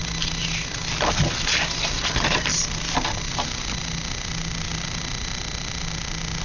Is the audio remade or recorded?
recorded